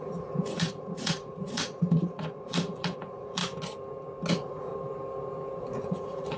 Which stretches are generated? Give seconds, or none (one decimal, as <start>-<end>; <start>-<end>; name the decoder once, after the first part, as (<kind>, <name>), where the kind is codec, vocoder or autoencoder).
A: 0.0-3.4 (vocoder, Vocos); 4.3-4.7; 5.6-6.4